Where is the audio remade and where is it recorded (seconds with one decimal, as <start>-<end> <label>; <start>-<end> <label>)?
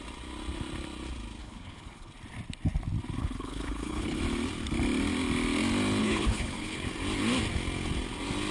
0.0-1.4 recorded; 1.4-2.1 remade; 2.1-3.2 recorded; 3.2-4.2 remade; 4.2-6.0 recorded; 6.0-6.9 remade; 6.9-8.5 recorded